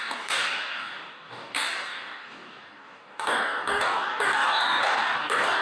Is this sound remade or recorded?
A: remade